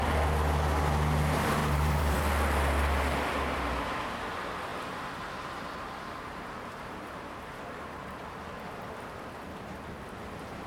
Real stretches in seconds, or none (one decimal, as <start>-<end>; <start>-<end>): 0.0-1.6; 2.2-4.7; 8.5-10.7